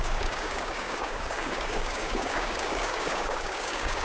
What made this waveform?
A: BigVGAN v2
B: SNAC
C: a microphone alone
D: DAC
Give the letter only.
D